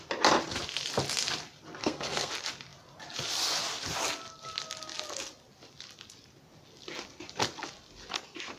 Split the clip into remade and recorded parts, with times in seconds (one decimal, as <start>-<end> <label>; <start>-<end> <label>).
0.0-1.8 recorded; 1.8-2.3 remade; 2.3-8.6 recorded